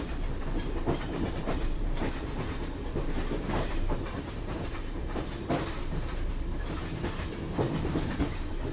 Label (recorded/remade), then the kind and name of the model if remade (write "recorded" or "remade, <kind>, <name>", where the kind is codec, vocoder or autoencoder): remade, vocoder, BigVGAN v2